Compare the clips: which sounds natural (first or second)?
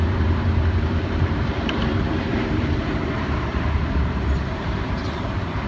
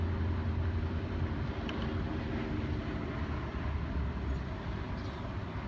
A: second